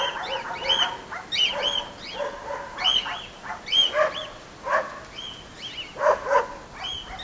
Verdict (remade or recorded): recorded